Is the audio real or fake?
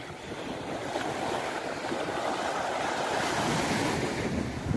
real